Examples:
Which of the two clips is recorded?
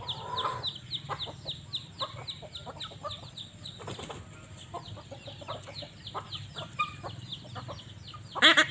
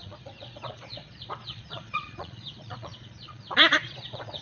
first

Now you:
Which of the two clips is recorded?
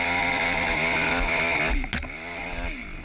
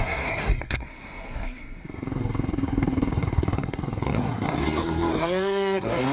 first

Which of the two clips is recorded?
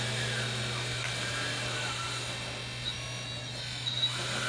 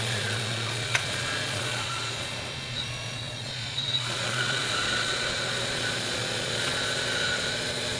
first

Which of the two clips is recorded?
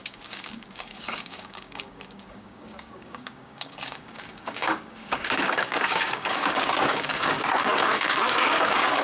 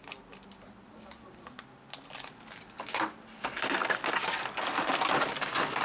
second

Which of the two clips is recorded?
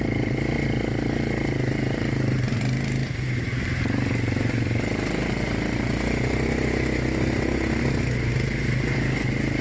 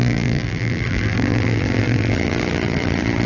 first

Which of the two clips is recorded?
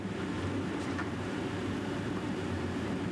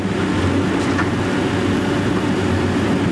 second